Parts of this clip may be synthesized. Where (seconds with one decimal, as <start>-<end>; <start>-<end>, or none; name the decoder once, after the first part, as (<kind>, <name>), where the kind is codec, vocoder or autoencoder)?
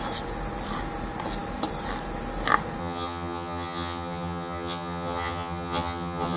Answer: 2.8-6.4 (vocoder, HiFi-GAN)